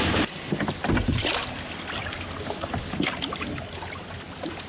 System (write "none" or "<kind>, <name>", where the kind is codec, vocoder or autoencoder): none